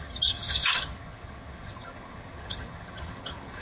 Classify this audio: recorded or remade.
remade